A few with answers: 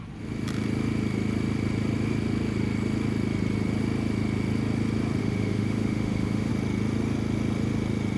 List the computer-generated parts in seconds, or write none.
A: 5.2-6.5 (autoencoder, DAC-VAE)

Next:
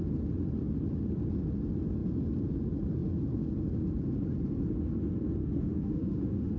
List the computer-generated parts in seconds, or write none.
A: 5.4-6.6 (autoencoder, DAC-VAE)

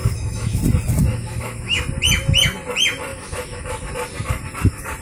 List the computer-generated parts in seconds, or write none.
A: 0.0-0.6 (autoencoder, DAC-VAE); 1.1-1.8; 3.1-3.9

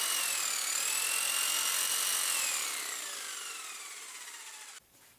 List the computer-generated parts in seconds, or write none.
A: none

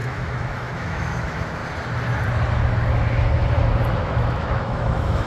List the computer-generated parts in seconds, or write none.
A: 0.0-1.6 (autoencoder, DAC-VAE); 4.0-5.3

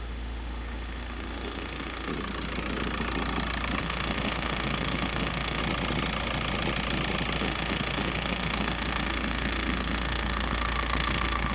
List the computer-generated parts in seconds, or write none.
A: 0.0-2.1 (autoencoder, DAC-VAE); 3.8-5.6; 7.4-11.5

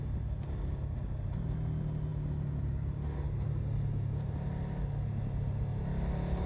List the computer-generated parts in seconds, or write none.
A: none

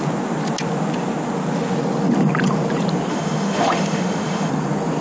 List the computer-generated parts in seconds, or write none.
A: 3.1-4.5 (autoencoder, DAC-VAE)